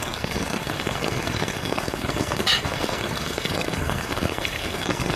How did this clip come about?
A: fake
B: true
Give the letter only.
A